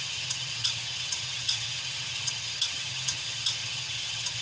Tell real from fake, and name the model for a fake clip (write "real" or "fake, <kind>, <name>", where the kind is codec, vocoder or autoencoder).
fake, vocoder, HiFi-GAN